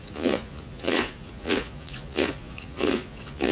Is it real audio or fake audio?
fake